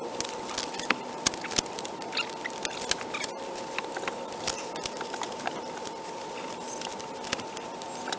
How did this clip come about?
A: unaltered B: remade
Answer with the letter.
A